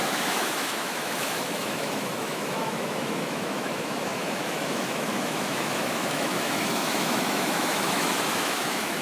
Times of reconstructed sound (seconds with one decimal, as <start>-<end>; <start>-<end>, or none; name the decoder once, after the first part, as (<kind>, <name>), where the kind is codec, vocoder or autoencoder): 0.0-9.0 (autoencoder, DAC-VAE)